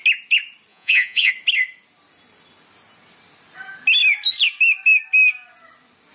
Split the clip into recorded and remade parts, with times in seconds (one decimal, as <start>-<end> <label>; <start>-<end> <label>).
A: 0.0-0.7 recorded; 0.7-1.3 remade; 1.3-6.1 recorded